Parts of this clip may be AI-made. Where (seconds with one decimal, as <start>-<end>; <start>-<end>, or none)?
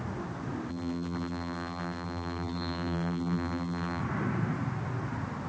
0.7-4.0